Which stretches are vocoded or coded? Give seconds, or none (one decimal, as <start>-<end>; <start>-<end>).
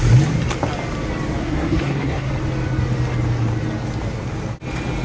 1.4-2.3